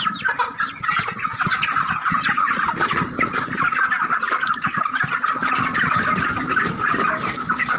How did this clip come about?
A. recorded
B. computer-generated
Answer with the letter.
A